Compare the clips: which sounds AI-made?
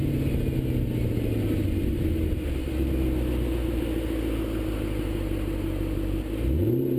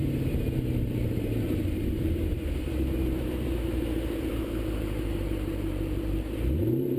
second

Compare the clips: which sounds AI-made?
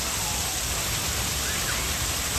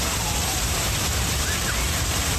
second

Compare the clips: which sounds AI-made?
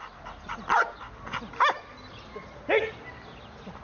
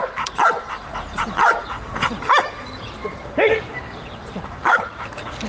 second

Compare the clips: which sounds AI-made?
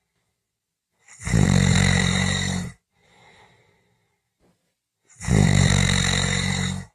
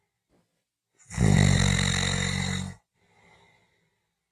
first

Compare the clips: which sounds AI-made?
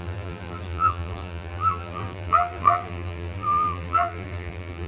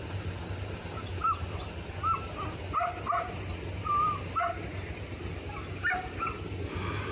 first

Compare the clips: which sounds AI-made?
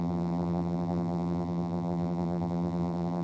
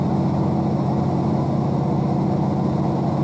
first